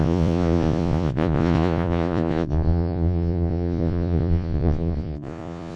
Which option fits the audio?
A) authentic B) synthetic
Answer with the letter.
B